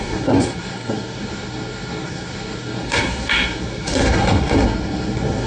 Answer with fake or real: fake